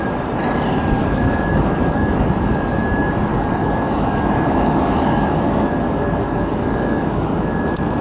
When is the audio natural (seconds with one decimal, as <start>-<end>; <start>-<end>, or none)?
0.0-1.0; 2.3-3.3; 7.6-8.0